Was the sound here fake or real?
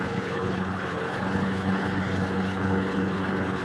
fake